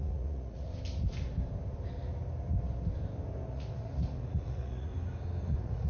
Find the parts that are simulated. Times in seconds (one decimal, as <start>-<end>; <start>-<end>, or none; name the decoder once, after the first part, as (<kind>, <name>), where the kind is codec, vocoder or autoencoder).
0.0-0.7 (vocoder, Vocos); 3.5-4.9; 5.4-5.9